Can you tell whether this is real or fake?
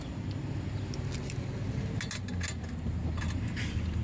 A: real